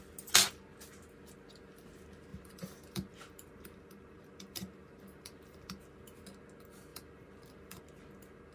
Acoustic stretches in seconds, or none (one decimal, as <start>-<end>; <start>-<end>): 0.0-2.3; 5.8-6.9; 7.8-8.5